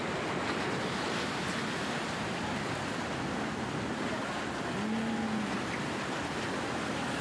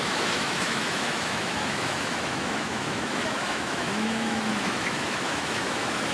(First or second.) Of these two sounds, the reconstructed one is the second